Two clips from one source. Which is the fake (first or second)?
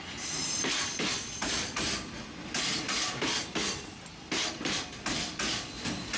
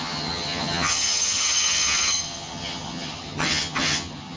second